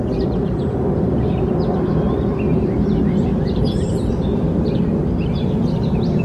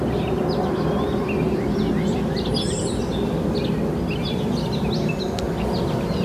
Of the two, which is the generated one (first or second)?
first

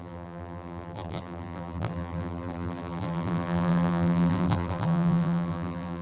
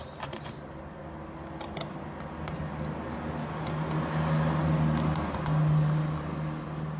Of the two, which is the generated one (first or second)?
first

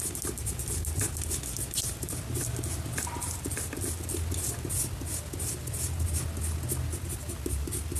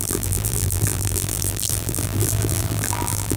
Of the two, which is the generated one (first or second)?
second